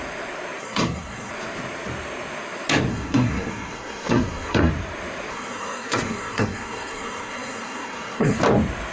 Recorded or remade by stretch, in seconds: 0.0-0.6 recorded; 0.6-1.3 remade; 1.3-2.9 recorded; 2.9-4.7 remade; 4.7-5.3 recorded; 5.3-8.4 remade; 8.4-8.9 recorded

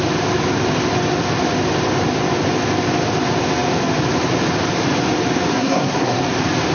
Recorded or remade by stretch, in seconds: 0.0-5.5 recorded; 5.5-6.2 remade; 6.2-6.7 recorded

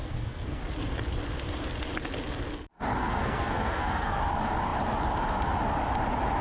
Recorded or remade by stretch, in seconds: 0.0-0.6 remade; 0.6-3.0 recorded; 3.0-4.2 remade; 4.2-6.4 recorded

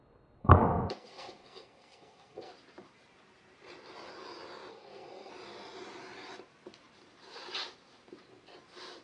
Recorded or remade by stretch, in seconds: 0.0-0.4 recorded; 0.4-2.5 remade; 2.5-4.7 recorded; 4.7-5.3 remade; 5.3-9.0 recorded

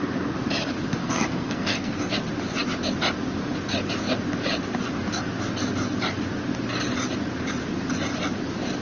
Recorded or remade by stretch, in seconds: 0.0-1.0 recorded; 1.0-2.1 remade; 2.1-8.8 recorded

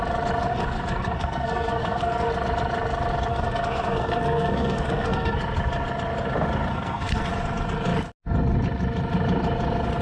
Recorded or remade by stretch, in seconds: 0.0-0.5 recorded; 0.5-2.3 remade; 2.3-3.3 recorded; 3.3-5.4 remade; 5.4-6.7 recorded; 6.7-7.3 remade; 7.3-10.0 recorded

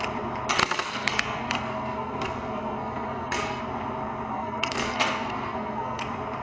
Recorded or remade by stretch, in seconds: 0.0-0.6 recorded; 0.6-3.6 remade; 3.6-4.3 recorded; 4.3-6.0 remade; 6.0-6.4 recorded

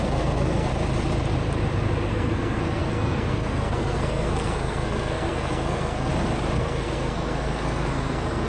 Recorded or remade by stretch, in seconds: 0.0-0.7 remade; 0.7-2.1 recorded; 2.1-6.1 remade; 6.1-6.6 recorded; 6.6-8.5 remade